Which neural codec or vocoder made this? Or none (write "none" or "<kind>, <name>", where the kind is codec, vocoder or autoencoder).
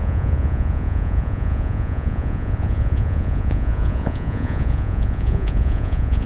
vocoder, Vocos